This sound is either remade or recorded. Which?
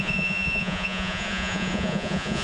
remade